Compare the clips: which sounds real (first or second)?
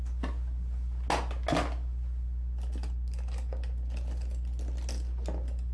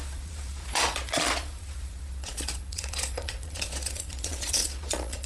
first